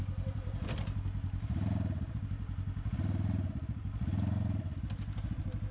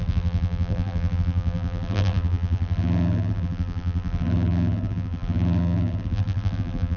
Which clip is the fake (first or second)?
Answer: second